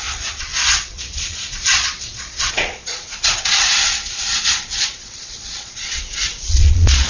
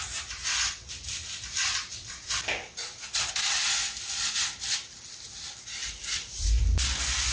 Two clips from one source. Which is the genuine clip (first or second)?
second